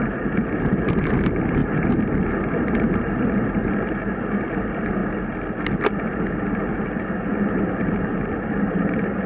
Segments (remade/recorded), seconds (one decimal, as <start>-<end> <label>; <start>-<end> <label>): 0.0-1.6 remade; 1.6-2.5 recorded; 2.5-5.0 remade; 5.0-6.3 recorded; 6.3-6.7 remade; 6.7-7.4 recorded; 7.4-9.3 remade